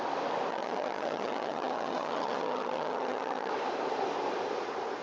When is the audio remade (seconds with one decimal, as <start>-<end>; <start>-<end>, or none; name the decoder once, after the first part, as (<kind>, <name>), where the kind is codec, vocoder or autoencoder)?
0.5-3.5 (vocoder, HiFi-GAN)